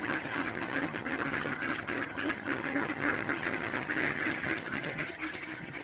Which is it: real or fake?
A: fake